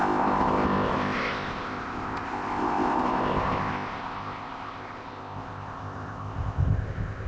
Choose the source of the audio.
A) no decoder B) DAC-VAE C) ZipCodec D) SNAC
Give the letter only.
C